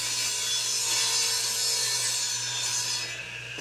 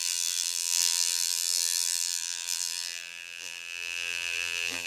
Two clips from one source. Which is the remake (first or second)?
second